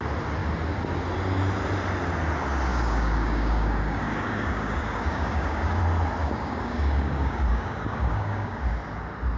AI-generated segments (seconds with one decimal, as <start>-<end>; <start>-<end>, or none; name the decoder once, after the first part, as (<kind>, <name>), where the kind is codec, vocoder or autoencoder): 2.7-5.8 (codec, DAC); 6.2-8.6